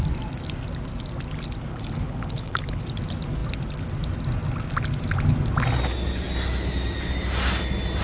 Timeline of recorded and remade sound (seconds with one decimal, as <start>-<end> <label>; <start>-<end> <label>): 0.0-1.7 recorded; 1.7-2.8 remade; 2.8-8.0 recorded